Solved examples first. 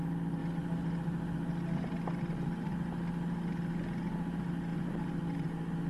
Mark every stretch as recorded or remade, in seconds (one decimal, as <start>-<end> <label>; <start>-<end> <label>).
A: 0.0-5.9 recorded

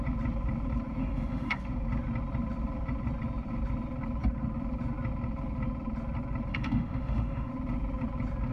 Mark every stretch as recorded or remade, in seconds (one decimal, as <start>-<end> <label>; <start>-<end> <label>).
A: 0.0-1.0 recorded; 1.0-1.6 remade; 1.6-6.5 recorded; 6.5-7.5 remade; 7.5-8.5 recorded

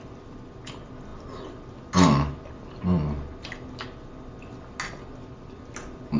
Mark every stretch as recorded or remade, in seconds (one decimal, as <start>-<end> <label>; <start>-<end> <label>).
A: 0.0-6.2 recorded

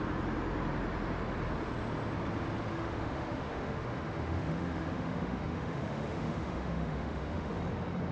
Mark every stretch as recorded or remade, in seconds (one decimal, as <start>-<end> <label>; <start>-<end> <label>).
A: 0.0-2.7 recorded; 2.7-7.6 remade; 7.6-8.1 recorded

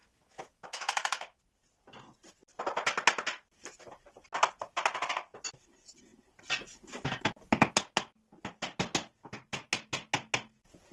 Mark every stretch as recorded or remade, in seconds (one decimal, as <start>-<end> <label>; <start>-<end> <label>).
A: 0.0-1.4 remade; 1.4-10.9 recorded

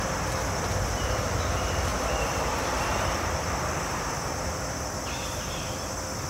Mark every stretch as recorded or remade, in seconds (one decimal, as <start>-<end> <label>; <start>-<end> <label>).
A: 0.0-6.3 recorded